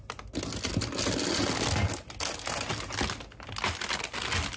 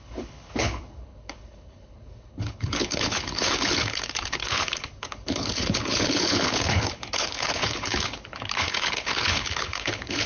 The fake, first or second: second